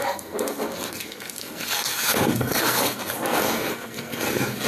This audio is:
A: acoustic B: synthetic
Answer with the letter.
B